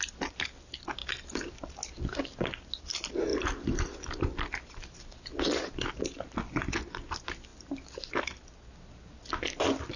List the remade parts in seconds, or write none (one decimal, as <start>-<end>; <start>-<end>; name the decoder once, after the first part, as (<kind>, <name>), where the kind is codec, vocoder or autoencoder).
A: 3.3-5.4 (vocoder, BigVGAN v2)